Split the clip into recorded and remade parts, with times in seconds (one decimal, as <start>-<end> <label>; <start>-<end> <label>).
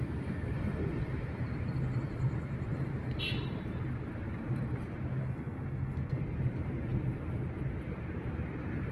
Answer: 0.0-5.2 recorded; 5.2-6.2 remade; 6.2-8.9 recorded